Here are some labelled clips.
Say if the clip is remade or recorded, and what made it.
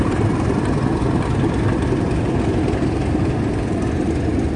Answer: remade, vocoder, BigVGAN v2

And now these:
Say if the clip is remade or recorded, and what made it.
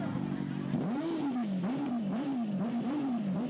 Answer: remade, vocoder, BigVGAN v2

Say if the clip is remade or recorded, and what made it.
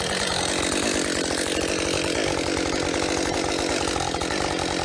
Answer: recorded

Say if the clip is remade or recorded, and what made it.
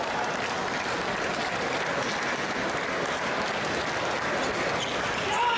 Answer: recorded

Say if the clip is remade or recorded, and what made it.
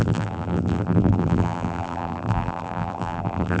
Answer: remade, vocoder, BigVGAN v2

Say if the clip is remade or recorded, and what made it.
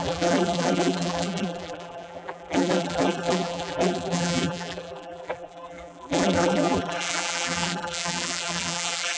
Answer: remade, vocoder, BigVGAN v2